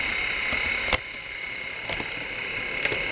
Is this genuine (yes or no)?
yes